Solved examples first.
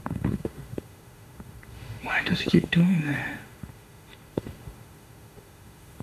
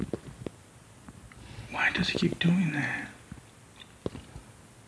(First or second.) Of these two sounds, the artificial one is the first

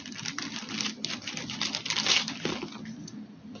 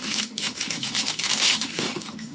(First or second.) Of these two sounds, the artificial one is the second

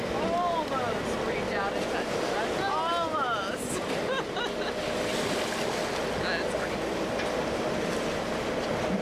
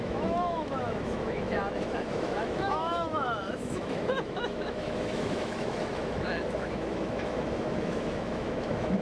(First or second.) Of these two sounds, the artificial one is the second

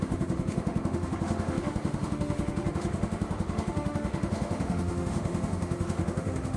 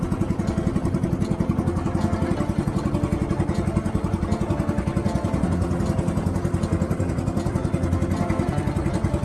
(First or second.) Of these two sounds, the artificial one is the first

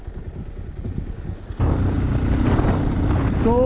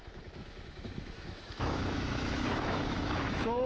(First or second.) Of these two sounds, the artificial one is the second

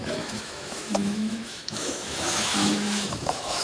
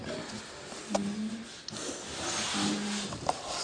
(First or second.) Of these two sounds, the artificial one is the first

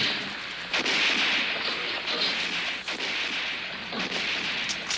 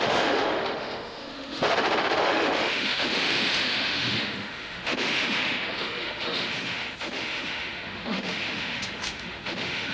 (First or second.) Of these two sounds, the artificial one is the second